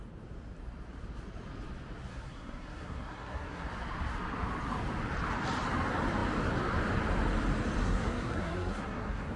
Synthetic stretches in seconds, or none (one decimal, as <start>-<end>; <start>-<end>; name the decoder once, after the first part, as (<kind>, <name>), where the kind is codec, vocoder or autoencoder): 2.1-3.7 (codec, SNAC); 7.8-9.4